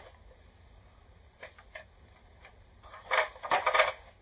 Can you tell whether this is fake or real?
fake